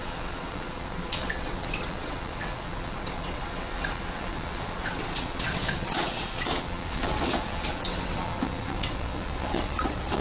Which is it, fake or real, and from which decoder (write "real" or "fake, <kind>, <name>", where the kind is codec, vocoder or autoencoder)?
fake, vocoder, WaveNeXt